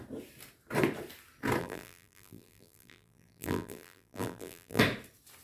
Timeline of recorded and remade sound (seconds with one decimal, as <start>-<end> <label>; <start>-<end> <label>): 0.0-1.6 recorded; 1.6-4.8 remade; 4.8-5.4 recorded

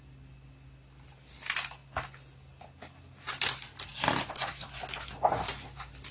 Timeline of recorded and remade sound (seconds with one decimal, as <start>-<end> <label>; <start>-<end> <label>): 0.0-6.1 remade

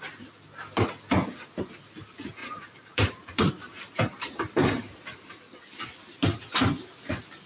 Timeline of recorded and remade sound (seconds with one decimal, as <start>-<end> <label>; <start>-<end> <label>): 0.0-2.4 recorded; 2.4-5.4 remade; 5.4-7.5 recorded

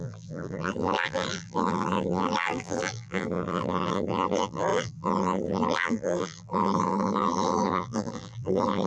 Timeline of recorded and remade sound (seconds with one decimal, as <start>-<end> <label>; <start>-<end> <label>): 0.0-8.9 remade

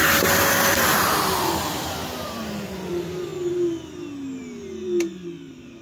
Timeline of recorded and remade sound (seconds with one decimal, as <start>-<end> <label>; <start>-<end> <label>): 0.0-3.3 remade; 3.3-4.4 recorded; 4.4-5.8 remade

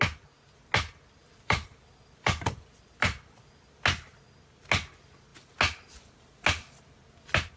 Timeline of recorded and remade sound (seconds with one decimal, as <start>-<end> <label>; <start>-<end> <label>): 0.0-1.2 recorded; 1.2-3.5 remade; 3.5-7.6 recorded

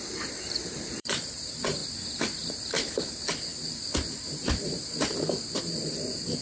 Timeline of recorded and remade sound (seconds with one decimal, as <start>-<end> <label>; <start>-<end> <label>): 0.0-1.8 remade; 1.8-5.6 recorded; 5.6-6.4 remade

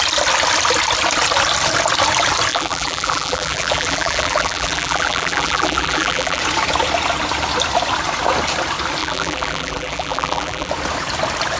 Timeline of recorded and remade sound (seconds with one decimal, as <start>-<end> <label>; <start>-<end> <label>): 0.0-2.5 recorded; 2.5-6.4 remade; 6.4-9.0 recorded; 9.0-10.7 remade; 10.7-11.6 recorded